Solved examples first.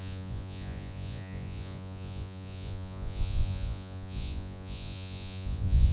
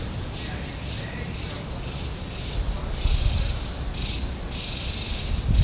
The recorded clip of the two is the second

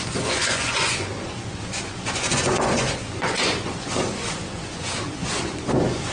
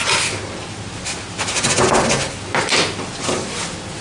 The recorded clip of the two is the second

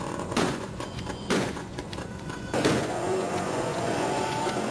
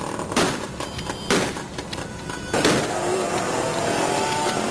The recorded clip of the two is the second